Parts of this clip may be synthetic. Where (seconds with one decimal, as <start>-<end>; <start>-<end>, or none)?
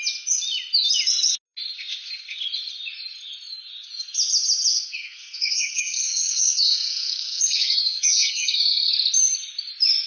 4.7-8.9